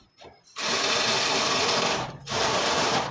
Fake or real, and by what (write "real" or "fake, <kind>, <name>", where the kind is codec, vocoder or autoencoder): real